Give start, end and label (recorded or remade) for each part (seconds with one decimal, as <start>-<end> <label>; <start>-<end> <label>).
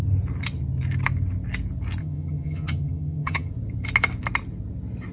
0.0-2.0 recorded; 2.0-3.5 remade; 3.5-5.1 recorded